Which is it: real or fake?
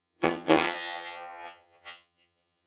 fake